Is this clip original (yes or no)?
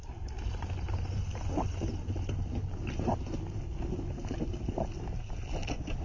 yes